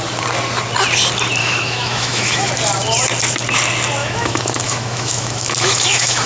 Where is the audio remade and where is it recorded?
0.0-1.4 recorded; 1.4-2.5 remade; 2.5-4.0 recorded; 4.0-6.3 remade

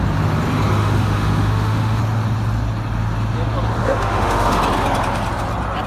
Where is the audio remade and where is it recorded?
0.0-0.8 recorded; 0.8-2.0 remade; 2.0-3.8 recorded; 3.8-4.6 remade; 4.6-5.9 recorded

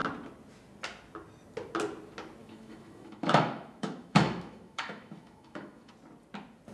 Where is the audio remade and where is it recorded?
0.0-2.4 recorded; 2.4-5.9 remade; 5.9-6.7 recorded

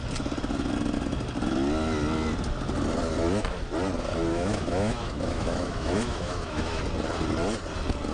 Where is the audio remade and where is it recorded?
0.0-4.3 recorded; 4.3-6.8 remade; 6.8-8.1 recorded

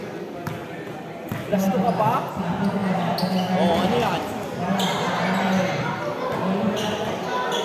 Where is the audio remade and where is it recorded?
0.0-7.6 recorded

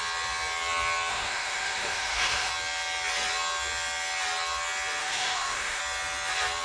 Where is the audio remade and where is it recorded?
0.0-1.1 recorded; 1.1-2.5 remade; 2.5-5.0 recorded; 5.0-5.8 remade; 5.8-6.6 recorded

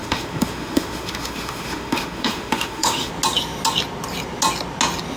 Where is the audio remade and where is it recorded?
0.0-3.1 remade; 3.1-5.2 recorded

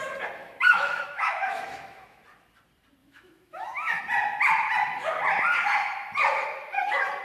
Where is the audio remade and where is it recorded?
0.0-0.4 recorded; 0.4-2.2 remade; 2.2-3.0 recorded; 3.0-4.0 remade; 4.0-7.2 recorded